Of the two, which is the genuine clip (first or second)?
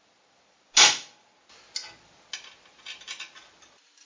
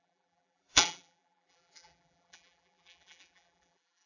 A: first